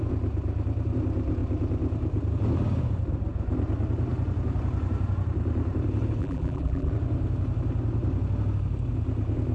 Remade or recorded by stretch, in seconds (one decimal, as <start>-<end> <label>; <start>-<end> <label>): 0.0-6.2 recorded; 6.2-6.9 remade; 6.9-9.5 recorded

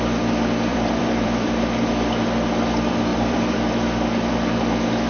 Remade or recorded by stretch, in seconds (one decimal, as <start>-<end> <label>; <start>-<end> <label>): 0.0-0.7 recorded; 0.7-1.9 remade; 1.9-3.1 recorded; 3.1-3.7 remade; 3.7-5.1 recorded

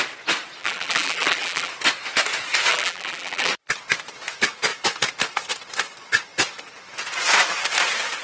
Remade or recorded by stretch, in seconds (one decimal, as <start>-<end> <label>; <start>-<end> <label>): 0.0-0.6 recorded; 0.6-1.7 remade; 1.7-2.7 recorded; 2.7-3.5 remade; 3.5-8.2 recorded

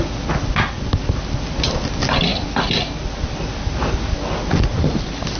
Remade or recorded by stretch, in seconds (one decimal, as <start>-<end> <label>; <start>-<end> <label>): 0.0-5.4 recorded

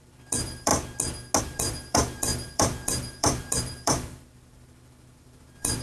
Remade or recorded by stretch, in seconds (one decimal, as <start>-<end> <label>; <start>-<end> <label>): 0.0-0.7 remade; 0.7-1.4 recorded; 1.4-5.8 remade

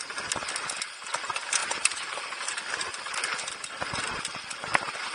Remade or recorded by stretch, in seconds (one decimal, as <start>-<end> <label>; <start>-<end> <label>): 0.0-1.6 recorded; 1.6-2.2 remade; 2.2-5.1 recorded

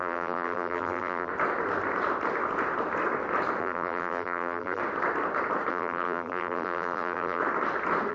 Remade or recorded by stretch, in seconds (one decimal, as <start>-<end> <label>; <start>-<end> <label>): 0.0-1.3 remade; 1.3-3.6 recorded; 3.6-4.8 remade; 4.8-5.7 recorded; 5.7-7.4 remade; 7.4-8.1 recorded